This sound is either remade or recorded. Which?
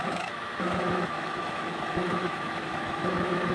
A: remade